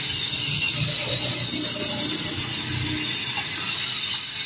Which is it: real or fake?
real